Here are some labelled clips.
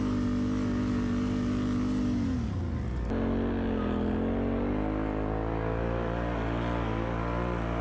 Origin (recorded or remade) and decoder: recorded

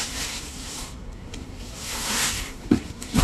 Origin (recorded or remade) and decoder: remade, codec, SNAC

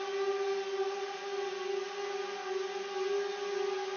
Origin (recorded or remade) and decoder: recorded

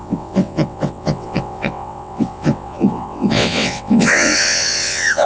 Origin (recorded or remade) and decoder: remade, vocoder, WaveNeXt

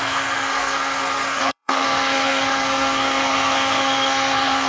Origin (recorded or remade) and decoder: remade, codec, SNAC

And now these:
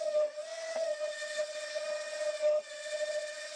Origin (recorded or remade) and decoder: remade, vocoder, WaveNeXt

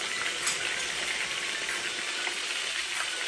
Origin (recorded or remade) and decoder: recorded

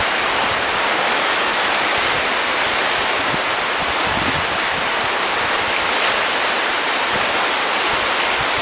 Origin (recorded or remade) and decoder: recorded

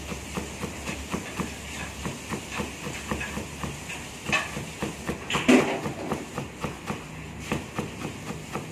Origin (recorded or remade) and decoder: recorded